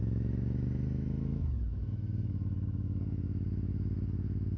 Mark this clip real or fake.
fake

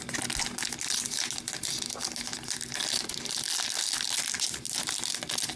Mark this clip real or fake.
real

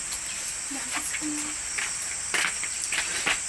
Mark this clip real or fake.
real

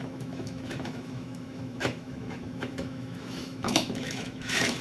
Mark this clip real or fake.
fake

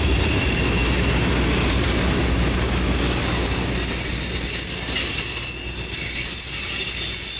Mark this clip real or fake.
real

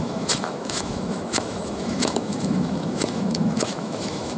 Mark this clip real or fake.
fake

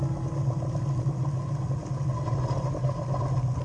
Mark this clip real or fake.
real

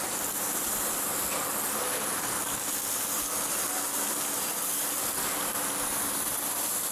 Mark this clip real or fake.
real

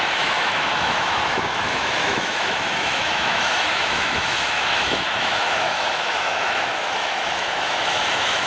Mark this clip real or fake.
fake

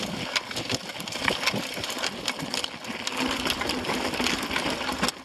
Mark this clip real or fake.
real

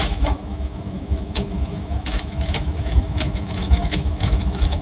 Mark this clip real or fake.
fake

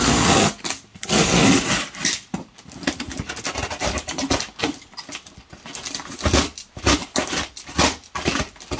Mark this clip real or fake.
real